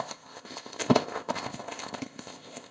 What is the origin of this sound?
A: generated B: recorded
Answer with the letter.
A